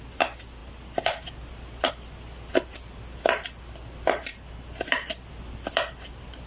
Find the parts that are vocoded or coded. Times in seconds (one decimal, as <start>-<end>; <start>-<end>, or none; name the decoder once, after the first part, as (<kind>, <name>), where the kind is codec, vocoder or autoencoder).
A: 4.3-5.3 (vocoder, BigVGAN v2)